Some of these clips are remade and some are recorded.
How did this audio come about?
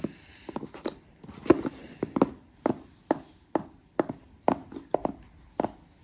recorded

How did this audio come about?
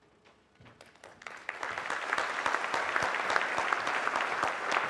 recorded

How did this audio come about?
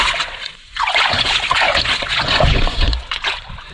remade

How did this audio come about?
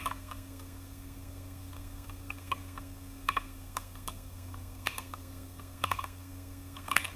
remade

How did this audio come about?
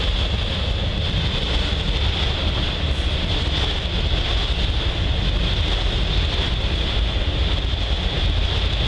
recorded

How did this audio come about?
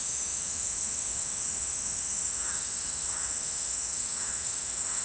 remade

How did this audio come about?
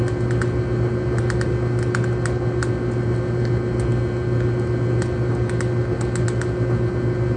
recorded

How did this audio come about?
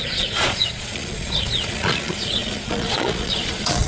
remade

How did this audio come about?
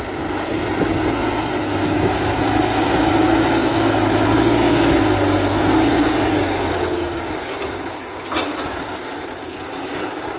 recorded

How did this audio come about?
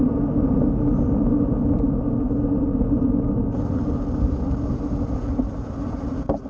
recorded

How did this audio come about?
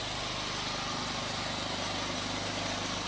recorded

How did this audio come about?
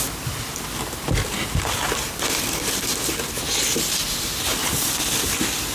recorded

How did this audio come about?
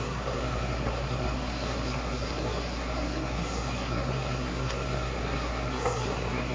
remade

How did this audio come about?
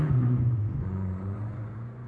remade